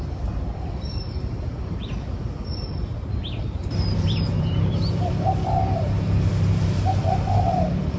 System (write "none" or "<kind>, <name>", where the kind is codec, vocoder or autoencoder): vocoder, BigVGAN v2